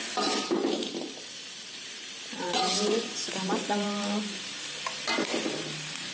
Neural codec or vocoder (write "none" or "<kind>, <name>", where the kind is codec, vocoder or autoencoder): vocoder, BigVGAN v2